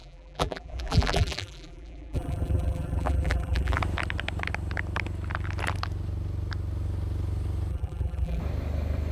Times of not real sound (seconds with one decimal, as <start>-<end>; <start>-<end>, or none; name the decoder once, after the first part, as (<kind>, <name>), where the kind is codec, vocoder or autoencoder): 0.0-3.8 (vocoder, BigVGAN v2); 7.7-8.4